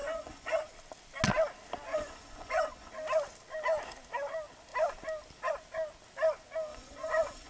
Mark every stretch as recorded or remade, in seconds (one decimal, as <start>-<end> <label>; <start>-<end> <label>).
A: 0.0-0.6 remade; 0.6-1.9 recorded; 1.9-2.9 remade; 2.9-6.7 recorded; 6.7-7.5 remade